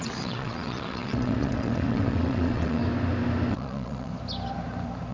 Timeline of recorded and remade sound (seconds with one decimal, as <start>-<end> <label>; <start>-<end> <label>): 0.0-2.8 remade; 2.8-3.5 recorded; 3.5-4.1 remade; 4.1-5.1 recorded